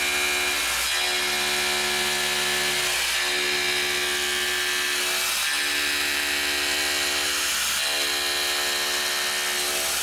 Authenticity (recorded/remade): recorded